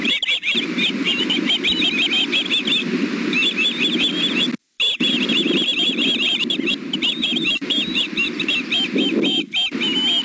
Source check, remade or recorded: recorded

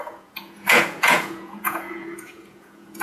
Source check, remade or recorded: remade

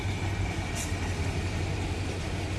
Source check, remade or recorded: recorded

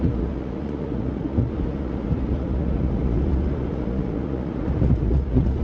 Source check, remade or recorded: remade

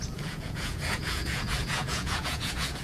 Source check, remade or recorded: remade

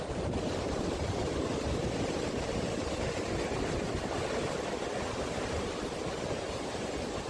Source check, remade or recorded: recorded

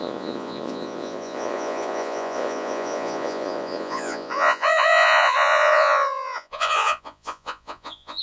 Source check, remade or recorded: remade